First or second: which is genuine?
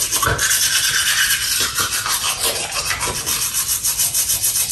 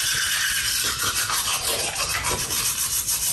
first